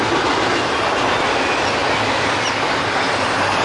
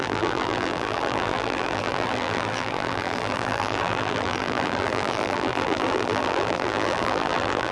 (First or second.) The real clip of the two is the first